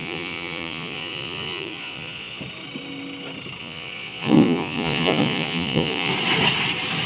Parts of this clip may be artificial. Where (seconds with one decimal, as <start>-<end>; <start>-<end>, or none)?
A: 0.0-2.4; 3.6-6.1